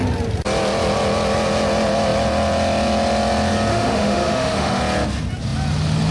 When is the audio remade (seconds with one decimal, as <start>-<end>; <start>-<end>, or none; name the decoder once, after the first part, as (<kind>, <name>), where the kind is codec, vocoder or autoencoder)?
3.7-4.8 (autoencoder, DAC-VAE)